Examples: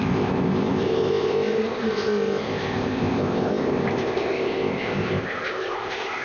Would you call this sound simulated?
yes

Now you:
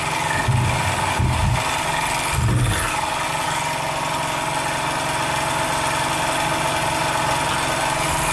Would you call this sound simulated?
no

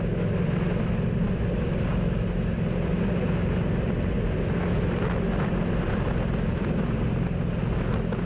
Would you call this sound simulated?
no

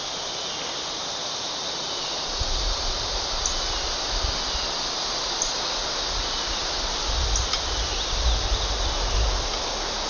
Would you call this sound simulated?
no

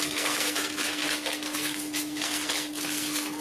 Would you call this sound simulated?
yes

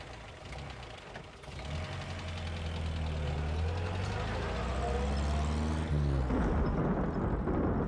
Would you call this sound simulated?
no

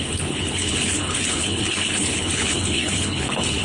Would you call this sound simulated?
yes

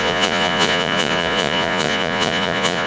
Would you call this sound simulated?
yes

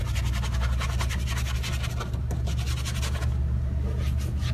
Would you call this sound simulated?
no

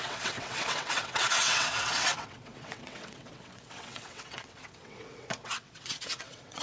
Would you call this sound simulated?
yes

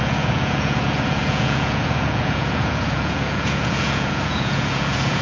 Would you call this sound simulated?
yes